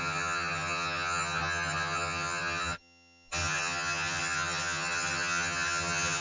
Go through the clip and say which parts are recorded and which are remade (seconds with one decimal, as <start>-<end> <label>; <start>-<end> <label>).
0.0-6.2 remade